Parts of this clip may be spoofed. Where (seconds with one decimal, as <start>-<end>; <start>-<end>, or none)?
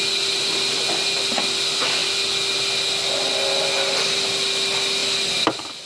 none